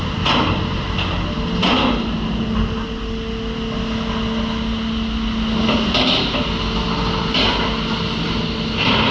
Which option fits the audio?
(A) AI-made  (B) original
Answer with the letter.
B